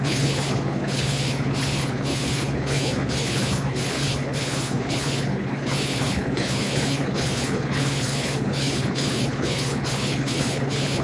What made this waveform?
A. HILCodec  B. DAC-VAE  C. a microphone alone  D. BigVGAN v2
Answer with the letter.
A